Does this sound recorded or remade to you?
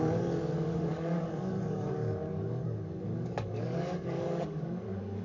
remade